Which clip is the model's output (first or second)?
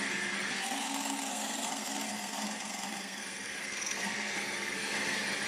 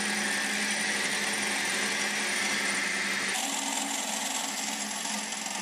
first